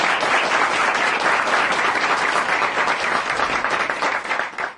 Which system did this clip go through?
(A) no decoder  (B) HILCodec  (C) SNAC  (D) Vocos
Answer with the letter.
A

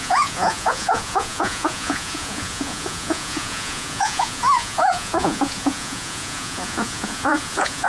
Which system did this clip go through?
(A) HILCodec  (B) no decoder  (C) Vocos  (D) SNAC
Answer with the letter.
C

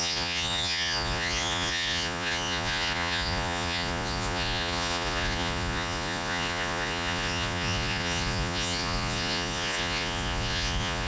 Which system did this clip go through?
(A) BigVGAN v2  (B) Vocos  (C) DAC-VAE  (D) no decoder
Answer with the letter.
B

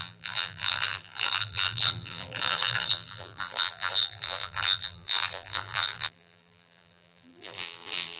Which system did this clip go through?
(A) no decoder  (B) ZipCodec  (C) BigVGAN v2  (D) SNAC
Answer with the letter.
C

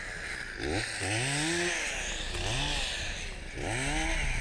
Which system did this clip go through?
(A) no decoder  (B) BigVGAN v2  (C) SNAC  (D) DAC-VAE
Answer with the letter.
A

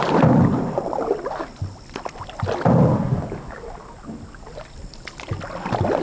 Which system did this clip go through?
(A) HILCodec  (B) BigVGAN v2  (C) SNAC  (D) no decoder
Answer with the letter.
D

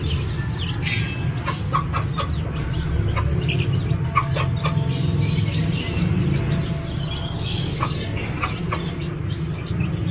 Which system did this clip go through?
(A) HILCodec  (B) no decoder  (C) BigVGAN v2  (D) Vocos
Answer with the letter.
B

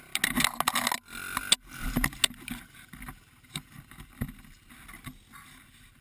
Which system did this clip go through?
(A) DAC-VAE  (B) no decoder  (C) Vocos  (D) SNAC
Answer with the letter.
B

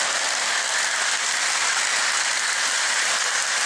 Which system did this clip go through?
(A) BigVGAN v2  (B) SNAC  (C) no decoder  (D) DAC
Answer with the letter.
C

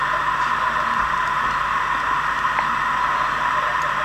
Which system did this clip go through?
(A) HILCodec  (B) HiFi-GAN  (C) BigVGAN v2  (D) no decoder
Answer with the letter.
D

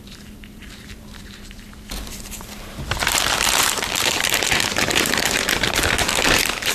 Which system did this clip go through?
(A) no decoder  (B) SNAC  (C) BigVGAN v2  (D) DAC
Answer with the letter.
C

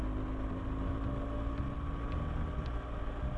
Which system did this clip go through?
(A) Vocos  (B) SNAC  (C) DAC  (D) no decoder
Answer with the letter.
D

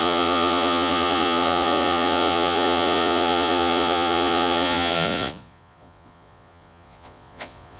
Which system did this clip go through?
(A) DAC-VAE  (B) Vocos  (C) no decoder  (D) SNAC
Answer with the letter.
B